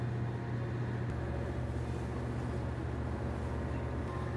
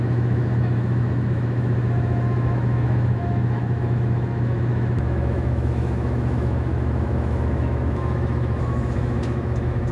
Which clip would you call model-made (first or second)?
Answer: second